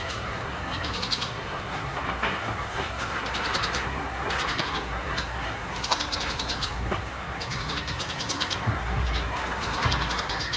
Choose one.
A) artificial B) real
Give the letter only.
A